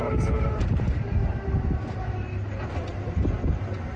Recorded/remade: recorded